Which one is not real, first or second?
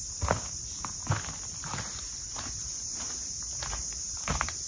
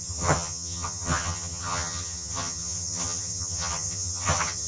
second